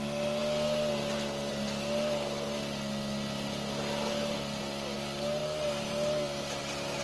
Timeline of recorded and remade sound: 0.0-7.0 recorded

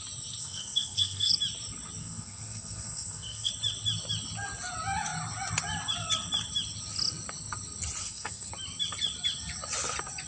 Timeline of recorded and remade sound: 0.0-0.4 recorded; 0.4-1.3 remade; 1.3-2.0 recorded; 2.0-3.5 remade; 3.5-8.0 recorded; 8.0-8.5 remade; 8.5-10.3 recorded

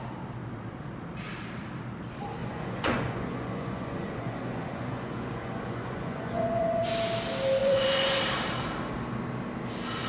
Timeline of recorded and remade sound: 0.0-2.4 recorded; 2.4-6.9 remade; 6.9-7.6 recorded; 7.6-8.2 remade; 8.2-10.1 recorded

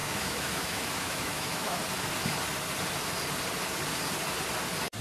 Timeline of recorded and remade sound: 0.0-1.8 remade; 1.8-5.0 recorded

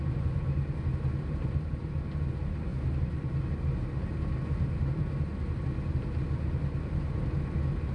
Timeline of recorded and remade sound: 0.0-7.9 recorded